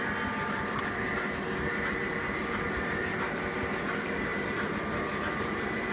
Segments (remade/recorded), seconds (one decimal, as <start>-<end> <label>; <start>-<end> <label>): 0.0-4.3 recorded; 4.3-4.8 remade; 4.8-5.9 recorded